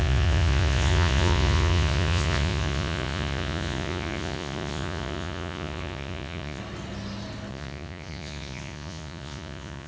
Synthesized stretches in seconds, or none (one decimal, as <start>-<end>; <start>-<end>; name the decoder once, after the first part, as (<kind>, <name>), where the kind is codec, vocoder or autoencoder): 0.0-6.6 (vocoder, Vocos); 7.5-9.9